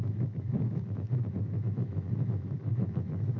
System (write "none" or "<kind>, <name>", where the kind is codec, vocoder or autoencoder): autoencoder, DAC-VAE